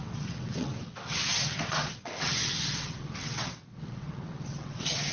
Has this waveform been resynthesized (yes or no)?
yes